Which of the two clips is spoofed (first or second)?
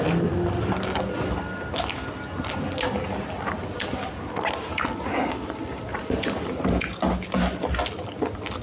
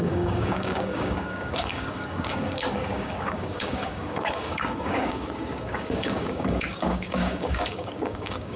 second